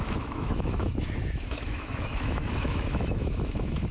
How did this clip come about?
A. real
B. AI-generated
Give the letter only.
B